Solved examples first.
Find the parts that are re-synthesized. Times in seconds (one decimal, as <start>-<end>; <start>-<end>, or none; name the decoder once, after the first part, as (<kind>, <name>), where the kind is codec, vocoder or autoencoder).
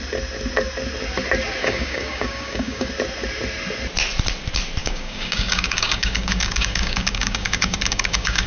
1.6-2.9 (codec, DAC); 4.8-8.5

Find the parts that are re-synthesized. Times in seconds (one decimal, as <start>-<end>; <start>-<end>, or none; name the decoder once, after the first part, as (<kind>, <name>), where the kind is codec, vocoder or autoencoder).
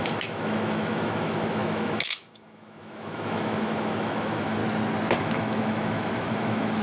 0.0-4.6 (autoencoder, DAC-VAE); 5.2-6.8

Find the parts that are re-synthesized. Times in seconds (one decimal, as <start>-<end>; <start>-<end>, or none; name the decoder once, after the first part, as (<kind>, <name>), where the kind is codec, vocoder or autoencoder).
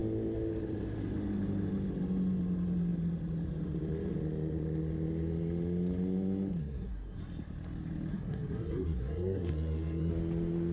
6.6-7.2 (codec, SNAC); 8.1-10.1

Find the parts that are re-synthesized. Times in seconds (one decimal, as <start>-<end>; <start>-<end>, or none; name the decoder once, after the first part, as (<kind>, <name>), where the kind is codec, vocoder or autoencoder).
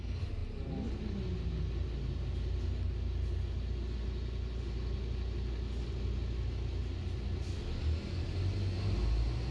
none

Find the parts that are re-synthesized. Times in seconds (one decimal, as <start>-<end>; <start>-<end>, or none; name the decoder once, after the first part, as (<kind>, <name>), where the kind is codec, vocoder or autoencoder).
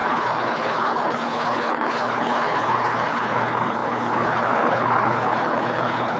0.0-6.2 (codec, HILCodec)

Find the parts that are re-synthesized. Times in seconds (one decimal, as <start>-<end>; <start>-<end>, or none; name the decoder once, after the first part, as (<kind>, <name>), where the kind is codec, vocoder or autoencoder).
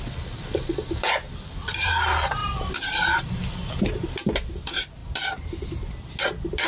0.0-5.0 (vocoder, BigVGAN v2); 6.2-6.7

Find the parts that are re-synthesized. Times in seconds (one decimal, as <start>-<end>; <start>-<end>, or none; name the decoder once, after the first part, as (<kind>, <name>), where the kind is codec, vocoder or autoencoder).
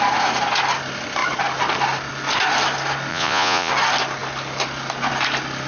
3.1-3.7 (vocoder, Vocos)